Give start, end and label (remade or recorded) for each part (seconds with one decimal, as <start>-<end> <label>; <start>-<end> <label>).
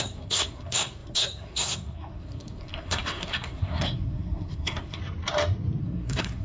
0.0-5.0 remade; 5.0-5.8 recorded; 5.8-6.4 remade